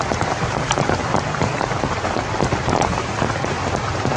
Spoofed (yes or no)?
yes